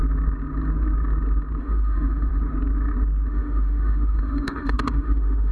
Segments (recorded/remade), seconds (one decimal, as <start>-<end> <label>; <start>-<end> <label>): 0.0-1.6 recorded; 1.6-2.3 remade; 2.3-3.3 recorded; 3.3-5.5 remade